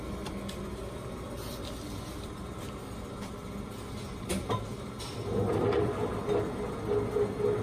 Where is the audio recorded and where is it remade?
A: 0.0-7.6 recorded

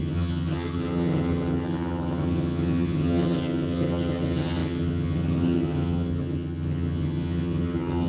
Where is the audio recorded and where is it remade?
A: 0.0-8.1 remade

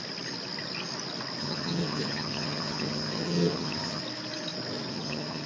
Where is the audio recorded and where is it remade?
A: 0.0-1.4 recorded; 1.4-4.0 remade; 4.0-4.9 recorded; 4.9-5.5 remade